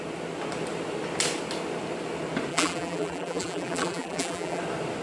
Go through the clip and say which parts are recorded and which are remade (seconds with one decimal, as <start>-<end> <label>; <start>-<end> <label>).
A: 0.0-2.5 recorded; 2.5-4.6 remade; 4.6-5.0 recorded